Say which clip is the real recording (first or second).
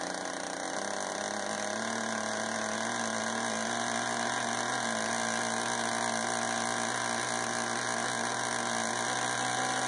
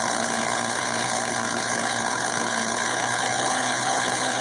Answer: first